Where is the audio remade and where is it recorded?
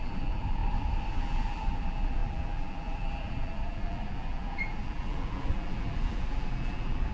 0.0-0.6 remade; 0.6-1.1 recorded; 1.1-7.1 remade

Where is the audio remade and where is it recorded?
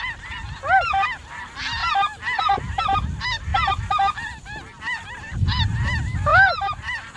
0.0-6.3 recorded; 6.3-7.2 remade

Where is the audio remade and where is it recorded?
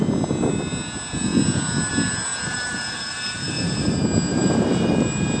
0.0-2.3 recorded; 2.3-3.9 remade; 3.9-4.3 recorded; 4.3-4.9 remade; 4.9-5.4 recorded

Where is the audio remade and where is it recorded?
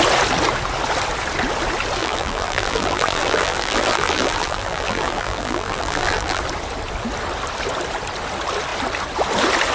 0.0-2.0 recorded; 2.0-6.4 remade; 6.4-9.7 recorded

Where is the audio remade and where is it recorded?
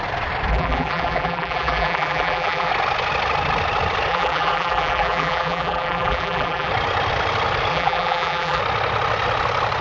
0.0-0.5 recorded; 0.5-2.7 remade; 2.7-4.1 recorded; 4.1-6.7 remade; 6.7-7.7 recorded; 7.7-8.6 remade; 8.6-9.8 recorded